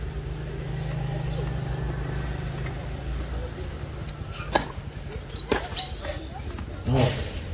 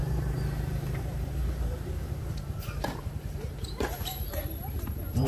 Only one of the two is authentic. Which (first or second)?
first